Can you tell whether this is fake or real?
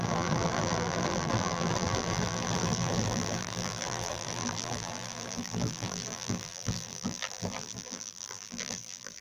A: fake